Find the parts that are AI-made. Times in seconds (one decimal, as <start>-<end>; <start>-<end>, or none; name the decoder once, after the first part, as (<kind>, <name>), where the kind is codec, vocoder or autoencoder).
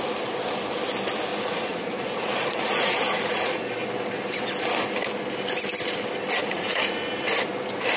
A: 1.3-3.6 (vocoder, Vocos); 6.4-7.1